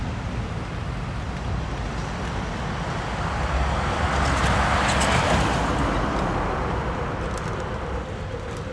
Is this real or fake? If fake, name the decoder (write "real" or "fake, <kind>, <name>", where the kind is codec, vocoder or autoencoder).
real